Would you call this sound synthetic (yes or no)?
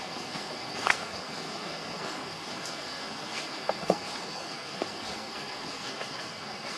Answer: yes